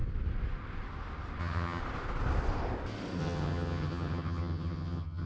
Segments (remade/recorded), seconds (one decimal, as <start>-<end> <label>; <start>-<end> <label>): 0.0-1.4 recorded; 1.4-1.8 remade; 1.8-3.2 recorded; 3.2-5.3 remade

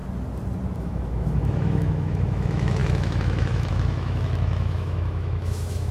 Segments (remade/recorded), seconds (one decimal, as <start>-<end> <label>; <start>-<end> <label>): 0.0-0.8 recorded; 0.8-5.9 remade

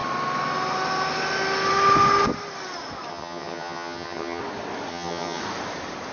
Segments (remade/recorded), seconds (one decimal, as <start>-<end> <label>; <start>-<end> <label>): 0.0-3.1 recorded; 3.1-4.4 remade; 4.4-4.9 recorded; 4.9-5.4 remade; 5.4-6.1 recorded